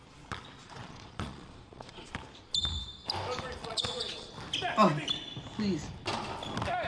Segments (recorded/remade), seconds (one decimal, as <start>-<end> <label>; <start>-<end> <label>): 0.0-0.6 recorded; 0.6-2.1 remade; 2.1-3.6 recorded; 3.6-4.3 remade; 4.3-6.9 recorded